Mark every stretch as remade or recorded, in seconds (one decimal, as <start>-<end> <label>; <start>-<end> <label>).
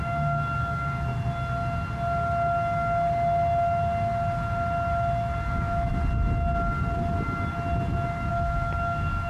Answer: 0.0-1.1 remade; 1.1-5.5 recorded; 5.5-5.9 remade; 5.9-8.3 recorded; 8.3-9.3 remade